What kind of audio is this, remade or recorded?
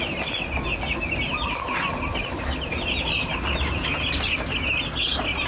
recorded